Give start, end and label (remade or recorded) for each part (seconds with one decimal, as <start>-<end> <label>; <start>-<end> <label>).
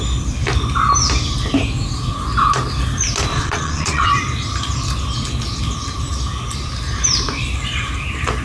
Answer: 0.0-3.3 recorded; 3.3-4.1 remade; 4.1-8.4 recorded